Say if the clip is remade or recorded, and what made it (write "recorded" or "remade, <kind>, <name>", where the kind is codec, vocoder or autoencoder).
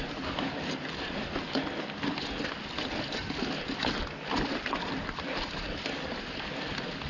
recorded